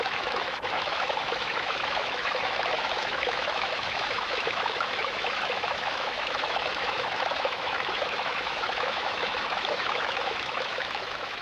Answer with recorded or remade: remade